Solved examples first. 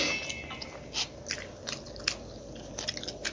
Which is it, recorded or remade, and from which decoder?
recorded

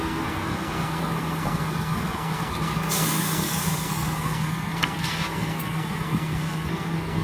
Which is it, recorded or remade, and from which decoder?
remade, codec, SNAC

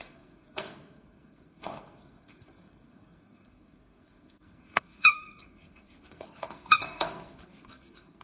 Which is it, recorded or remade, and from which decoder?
remade, codec, SNAC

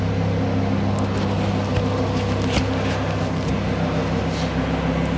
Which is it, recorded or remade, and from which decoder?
recorded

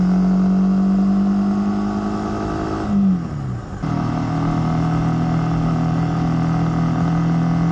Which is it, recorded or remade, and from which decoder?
recorded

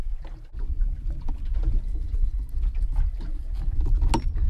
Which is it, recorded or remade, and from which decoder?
recorded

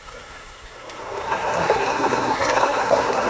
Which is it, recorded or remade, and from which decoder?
remade, codec, SNAC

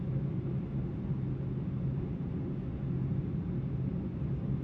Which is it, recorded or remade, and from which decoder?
recorded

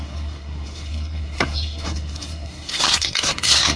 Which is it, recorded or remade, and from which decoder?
remade, codec, SNAC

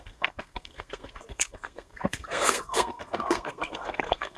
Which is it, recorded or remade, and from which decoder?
remade, codec, SNAC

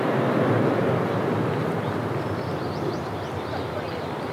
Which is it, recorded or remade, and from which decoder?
recorded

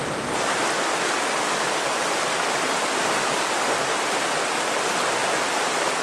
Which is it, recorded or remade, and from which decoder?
recorded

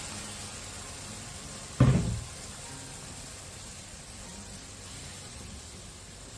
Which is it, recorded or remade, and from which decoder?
recorded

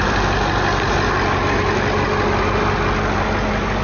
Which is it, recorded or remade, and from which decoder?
recorded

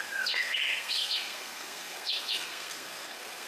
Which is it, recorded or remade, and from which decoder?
remade, codec, SNAC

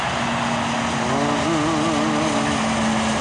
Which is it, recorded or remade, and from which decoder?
recorded